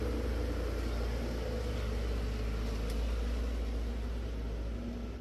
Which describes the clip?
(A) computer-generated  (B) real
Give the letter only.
B